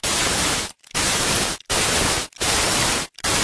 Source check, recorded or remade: remade